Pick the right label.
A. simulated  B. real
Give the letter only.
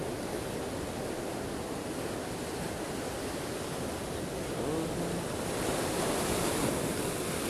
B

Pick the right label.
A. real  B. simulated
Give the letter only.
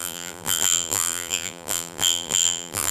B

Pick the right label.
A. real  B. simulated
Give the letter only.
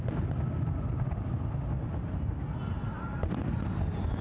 A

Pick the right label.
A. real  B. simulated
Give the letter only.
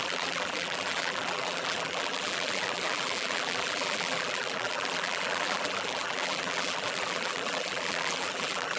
B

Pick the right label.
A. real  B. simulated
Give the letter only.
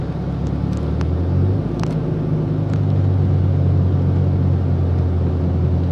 A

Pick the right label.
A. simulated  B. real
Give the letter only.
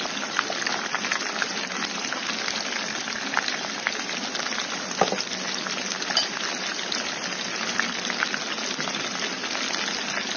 B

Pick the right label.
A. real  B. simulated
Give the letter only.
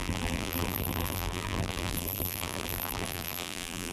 B